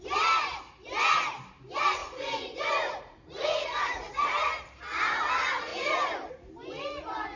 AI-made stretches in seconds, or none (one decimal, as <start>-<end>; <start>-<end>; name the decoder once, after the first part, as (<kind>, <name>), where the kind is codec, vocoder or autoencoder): 2.0-4.3 (vocoder, Vocos)